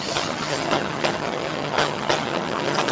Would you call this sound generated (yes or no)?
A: yes